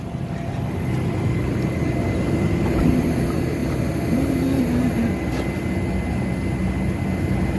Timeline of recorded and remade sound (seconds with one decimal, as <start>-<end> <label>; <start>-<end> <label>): 0.0-7.6 recorded